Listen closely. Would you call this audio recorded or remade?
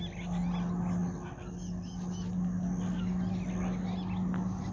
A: recorded